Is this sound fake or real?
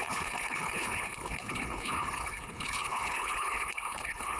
fake